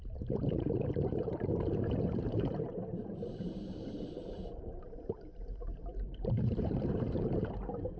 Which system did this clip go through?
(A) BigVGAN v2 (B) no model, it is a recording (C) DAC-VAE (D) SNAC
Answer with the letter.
A